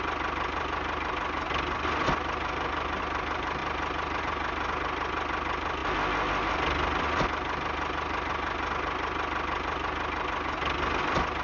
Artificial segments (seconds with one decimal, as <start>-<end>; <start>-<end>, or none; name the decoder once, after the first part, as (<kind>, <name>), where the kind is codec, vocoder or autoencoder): none